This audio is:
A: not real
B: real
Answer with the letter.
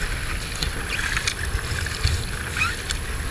B